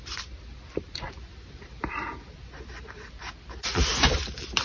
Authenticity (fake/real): real